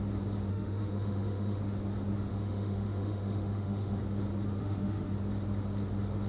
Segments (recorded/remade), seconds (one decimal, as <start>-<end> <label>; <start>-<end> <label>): 0.0-0.5 recorded; 0.5-1.6 remade; 1.6-2.3 recorded; 2.3-4.0 remade; 4.0-4.6 recorded; 4.6-5.1 remade; 5.1-6.3 recorded